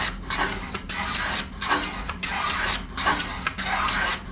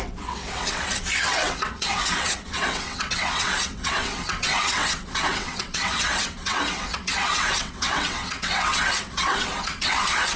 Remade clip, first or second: second